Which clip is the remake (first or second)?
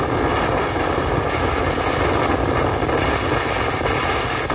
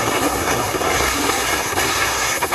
second